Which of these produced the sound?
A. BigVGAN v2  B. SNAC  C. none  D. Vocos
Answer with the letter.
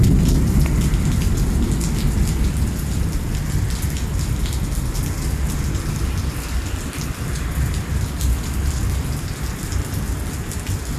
C